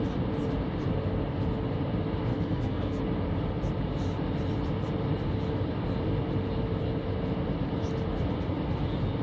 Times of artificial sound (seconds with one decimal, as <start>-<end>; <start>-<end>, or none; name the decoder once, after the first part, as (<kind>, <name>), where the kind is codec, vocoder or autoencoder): 2.3-3.0 (codec, SNAC)